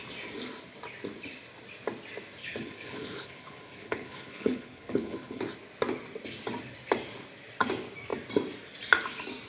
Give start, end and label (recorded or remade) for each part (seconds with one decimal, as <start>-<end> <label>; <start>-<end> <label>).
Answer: 0.0-2.4 recorded; 2.4-5.4 remade; 5.4-9.5 recorded